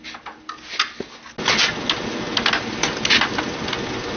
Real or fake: real